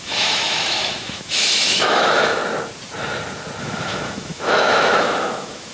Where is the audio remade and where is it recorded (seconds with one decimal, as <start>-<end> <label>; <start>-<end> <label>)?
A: 0.0-2.4 remade; 2.4-3.6 recorded; 3.6-5.7 remade